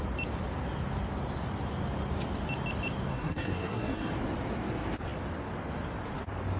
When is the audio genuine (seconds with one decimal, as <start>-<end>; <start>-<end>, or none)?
0.0-3.1; 4.1-6.6